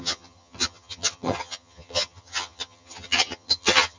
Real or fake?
fake